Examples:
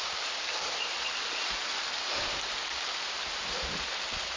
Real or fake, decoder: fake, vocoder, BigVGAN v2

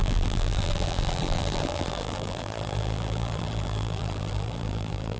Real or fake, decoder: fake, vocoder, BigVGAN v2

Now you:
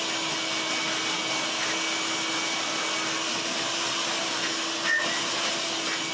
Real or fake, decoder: real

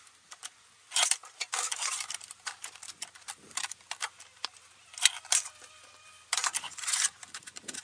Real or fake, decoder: fake, vocoder, BigVGAN v2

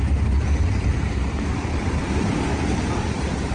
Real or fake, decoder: fake, vocoder, BigVGAN v2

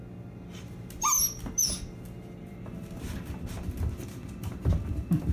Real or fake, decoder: real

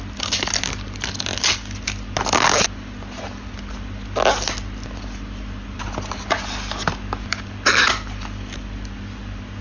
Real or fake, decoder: real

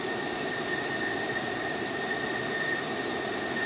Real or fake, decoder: real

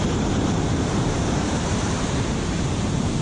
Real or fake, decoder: fake, vocoder, BigVGAN v2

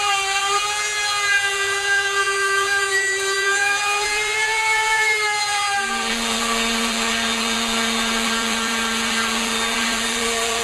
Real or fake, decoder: fake, vocoder, BigVGAN v2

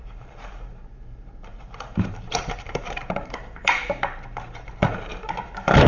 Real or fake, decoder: fake, vocoder, BigVGAN v2